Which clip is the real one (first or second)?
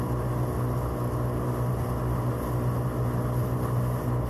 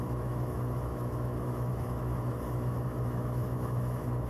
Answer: first